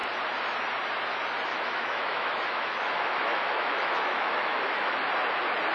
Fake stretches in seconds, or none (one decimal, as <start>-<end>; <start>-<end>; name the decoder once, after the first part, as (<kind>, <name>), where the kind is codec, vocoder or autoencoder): 1.5-4.9 (autoencoder, DAC-VAE)